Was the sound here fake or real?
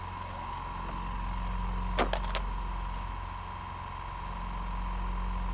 real